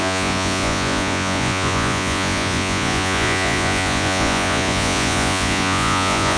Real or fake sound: fake